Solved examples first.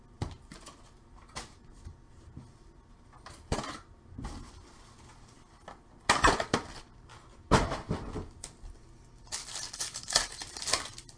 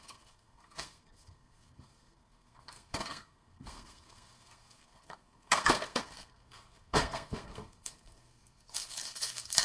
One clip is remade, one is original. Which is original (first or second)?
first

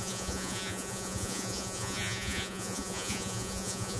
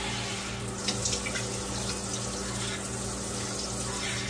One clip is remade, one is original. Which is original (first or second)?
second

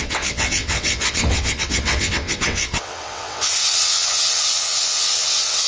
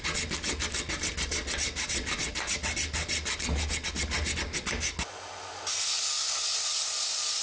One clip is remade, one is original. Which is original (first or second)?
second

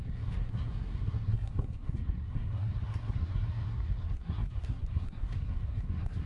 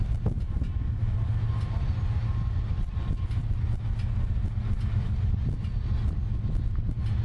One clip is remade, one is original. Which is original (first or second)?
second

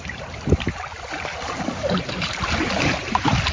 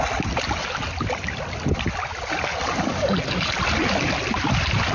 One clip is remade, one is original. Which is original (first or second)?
second